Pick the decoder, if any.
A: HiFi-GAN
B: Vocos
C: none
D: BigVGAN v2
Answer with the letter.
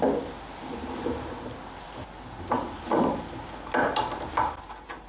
C